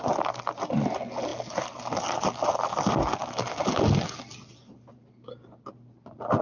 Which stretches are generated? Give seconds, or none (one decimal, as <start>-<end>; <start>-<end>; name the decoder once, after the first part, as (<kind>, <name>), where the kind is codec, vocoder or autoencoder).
none